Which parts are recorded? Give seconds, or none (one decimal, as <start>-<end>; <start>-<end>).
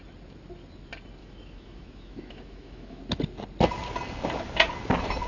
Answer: 0.0-1.2; 3.0-5.3